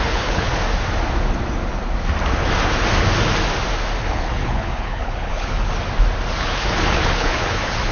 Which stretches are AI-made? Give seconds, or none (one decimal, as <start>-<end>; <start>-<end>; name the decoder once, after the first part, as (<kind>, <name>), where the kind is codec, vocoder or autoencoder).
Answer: 0.0-0.5 (codec, HILCodec); 4.0-5.7; 6.4-7.9